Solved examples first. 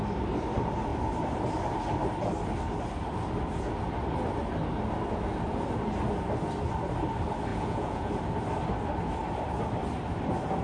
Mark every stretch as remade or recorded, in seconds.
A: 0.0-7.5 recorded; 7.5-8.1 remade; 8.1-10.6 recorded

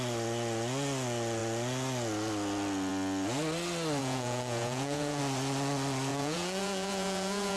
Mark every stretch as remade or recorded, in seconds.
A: 0.0-4.0 recorded; 4.0-5.2 remade; 5.2-6.1 recorded; 6.1-7.6 remade

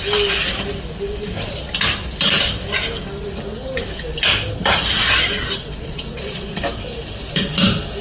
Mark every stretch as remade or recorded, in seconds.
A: 0.0-5.6 recorded; 5.6-6.6 remade; 6.6-8.0 recorded

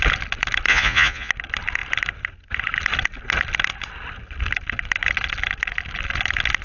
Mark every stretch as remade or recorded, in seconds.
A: 0.0-0.7 recorded; 0.7-1.3 remade; 1.3-6.6 recorded

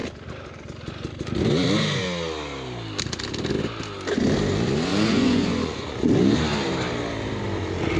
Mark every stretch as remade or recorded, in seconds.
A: 0.0-4.9 recorded; 4.9-6.1 remade; 6.1-8.0 recorded